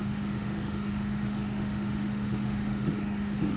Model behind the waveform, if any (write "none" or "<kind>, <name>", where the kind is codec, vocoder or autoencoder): autoencoder, DAC-VAE